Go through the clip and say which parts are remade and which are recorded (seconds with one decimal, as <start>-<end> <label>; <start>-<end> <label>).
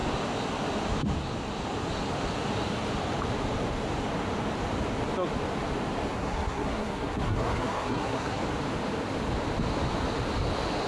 0.0-6.1 recorded; 6.1-8.4 remade; 8.4-10.9 recorded